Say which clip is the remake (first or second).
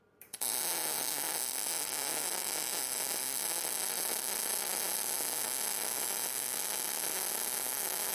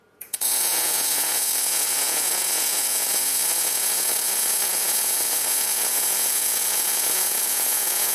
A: second